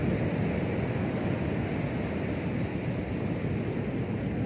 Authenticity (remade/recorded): recorded